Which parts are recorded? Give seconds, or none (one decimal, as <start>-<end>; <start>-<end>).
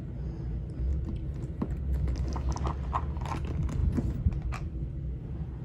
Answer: 0.0-0.9; 1.8-3.8; 4.3-5.6